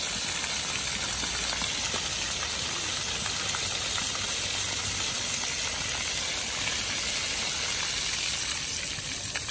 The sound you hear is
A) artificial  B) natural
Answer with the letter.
B